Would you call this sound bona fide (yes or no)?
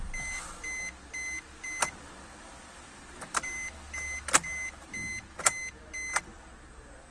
yes